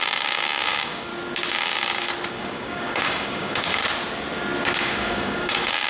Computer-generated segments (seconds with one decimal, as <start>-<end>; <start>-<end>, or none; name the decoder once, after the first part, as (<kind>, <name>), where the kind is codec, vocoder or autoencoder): 0.0-1.1 (codec, DAC); 2.3-3.8; 4.8-5.9